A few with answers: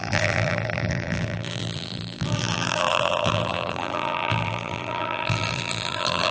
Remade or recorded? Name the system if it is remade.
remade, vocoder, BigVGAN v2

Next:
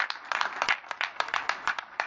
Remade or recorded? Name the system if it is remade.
remade, vocoder, BigVGAN v2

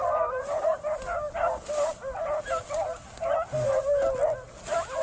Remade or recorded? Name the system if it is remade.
recorded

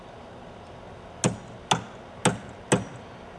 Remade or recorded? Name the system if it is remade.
recorded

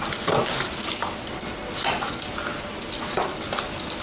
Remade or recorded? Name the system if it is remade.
recorded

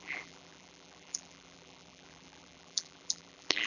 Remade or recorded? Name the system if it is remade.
remade, vocoder, BigVGAN v2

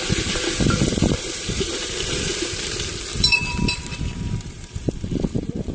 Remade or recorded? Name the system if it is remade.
remade, vocoder, BigVGAN v2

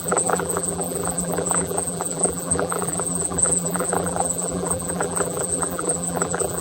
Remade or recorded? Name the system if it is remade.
remade, vocoder, BigVGAN v2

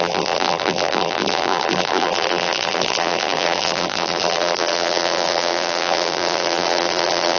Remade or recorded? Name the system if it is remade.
remade, vocoder, BigVGAN v2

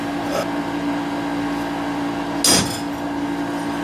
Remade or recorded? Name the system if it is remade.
recorded